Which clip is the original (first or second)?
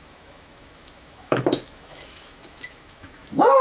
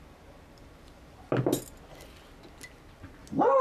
second